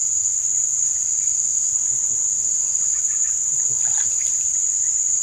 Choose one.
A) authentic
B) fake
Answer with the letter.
B